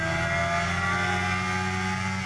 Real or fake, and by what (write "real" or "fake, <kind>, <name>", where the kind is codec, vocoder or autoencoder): real